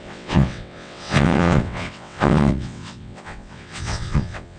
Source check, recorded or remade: remade